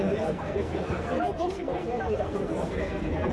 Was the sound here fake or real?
fake